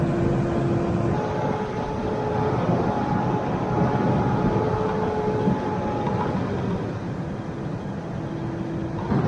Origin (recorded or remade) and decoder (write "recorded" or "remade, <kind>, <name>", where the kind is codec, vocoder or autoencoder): recorded